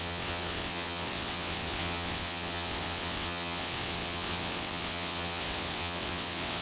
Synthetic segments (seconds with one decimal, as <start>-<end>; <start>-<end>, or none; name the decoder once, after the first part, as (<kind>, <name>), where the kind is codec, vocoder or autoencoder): 0.0-6.6 (vocoder, WaveNeXt)